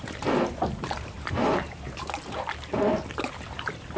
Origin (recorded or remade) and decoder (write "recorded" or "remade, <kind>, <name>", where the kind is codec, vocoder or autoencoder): remade, vocoder, BigVGAN v2